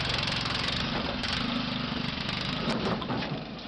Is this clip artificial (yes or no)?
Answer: yes